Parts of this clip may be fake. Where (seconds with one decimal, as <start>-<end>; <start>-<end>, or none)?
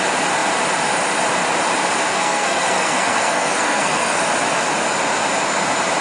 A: 2.1-4.2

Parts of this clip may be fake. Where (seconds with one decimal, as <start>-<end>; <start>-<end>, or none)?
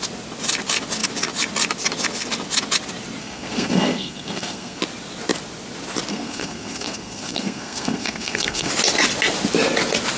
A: 3.2-4.8; 6.1-8.7